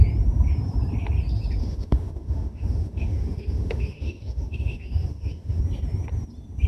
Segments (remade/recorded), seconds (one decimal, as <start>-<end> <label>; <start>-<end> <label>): 0.0-1.6 recorded; 1.6-5.6 remade; 5.6-6.7 recorded